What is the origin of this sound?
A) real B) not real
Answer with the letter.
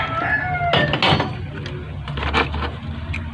A